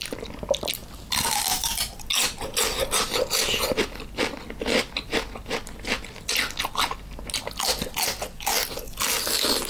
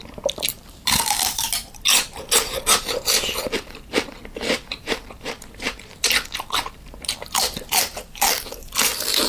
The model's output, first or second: second